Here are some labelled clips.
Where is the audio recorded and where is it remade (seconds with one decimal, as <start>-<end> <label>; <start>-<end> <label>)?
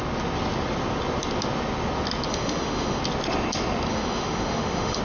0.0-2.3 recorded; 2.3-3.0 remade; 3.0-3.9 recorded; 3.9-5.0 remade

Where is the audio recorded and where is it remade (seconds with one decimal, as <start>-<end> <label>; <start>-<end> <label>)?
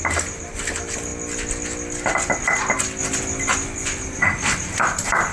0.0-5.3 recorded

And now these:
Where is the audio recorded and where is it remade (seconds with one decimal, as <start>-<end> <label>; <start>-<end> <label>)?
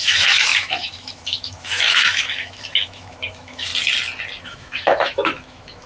0.0-3.7 remade; 3.7-4.4 recorded; 4.4-5.9 remade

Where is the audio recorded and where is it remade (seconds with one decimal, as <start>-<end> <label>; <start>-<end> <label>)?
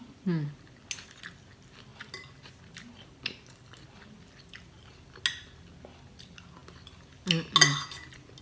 0.0-8.4 recorded